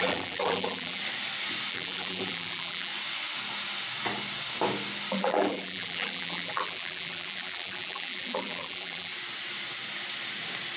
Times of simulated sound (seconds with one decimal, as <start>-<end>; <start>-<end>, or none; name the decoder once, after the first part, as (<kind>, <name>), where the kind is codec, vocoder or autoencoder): 0.0-1.0 (vocoder, BigVGAN v2); 1.7-2.9; 5.1-9.1